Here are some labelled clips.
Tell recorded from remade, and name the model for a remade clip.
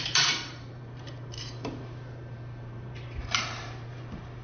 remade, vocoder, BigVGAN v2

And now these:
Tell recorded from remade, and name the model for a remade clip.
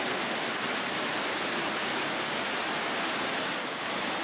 recorded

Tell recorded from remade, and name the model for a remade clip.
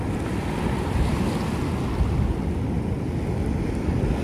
recorded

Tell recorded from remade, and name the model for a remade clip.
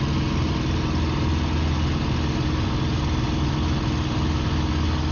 recorded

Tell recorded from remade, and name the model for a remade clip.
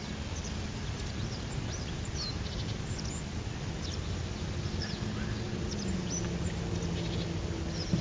recorded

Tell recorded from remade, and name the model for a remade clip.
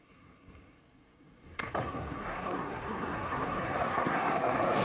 remade, codec, SNAC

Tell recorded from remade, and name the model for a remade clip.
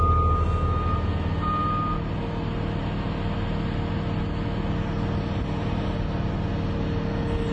recorded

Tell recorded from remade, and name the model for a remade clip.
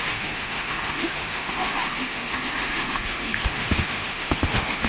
remade, autoencoder, DAC-VAE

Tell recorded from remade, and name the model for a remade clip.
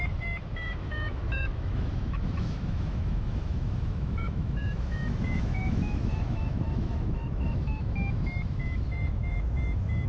remade, autoencoder, DAC-VAE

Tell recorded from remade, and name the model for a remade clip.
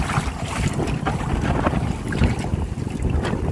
recorded